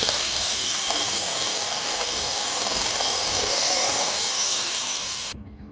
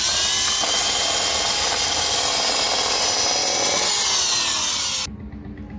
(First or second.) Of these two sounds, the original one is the second